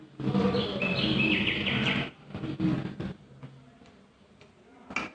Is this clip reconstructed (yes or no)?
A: no